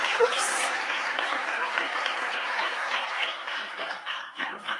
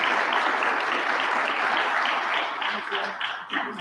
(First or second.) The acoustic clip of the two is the second